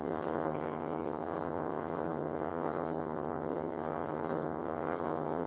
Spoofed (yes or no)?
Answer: yes